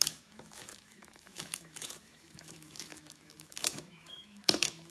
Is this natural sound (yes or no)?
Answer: no